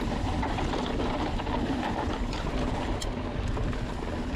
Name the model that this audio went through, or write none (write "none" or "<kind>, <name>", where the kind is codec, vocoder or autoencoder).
none